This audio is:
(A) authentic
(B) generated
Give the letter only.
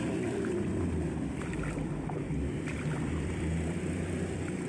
B